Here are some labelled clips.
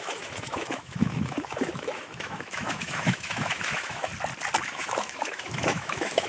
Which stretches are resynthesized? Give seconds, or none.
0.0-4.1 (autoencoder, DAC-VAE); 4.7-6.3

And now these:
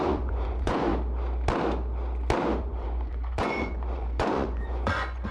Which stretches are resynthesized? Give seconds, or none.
0.0-0.9 (vocoder, Vocos); 2.6-5.3

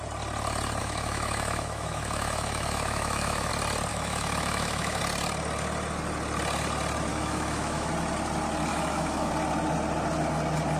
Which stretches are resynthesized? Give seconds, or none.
0.8-3.5 (autoencoder, DAC-VAE); 3.9-5.0; 7.1-7.9; 8.7-9.3

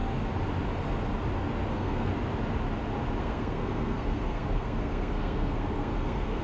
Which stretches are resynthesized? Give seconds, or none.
1.7-2.1 (codec, SNAC); 3.2-6.4

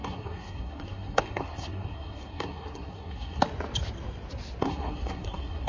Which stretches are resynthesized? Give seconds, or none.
0.0-3.4 (codec, SNAC); 4.6-5.7

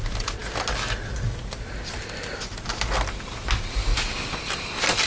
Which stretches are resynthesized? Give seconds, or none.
none

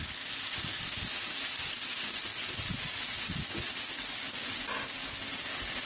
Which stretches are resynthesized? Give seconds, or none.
none

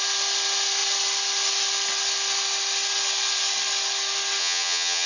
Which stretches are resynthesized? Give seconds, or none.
4.4-5.1 (vocoder, HiFi-GAN)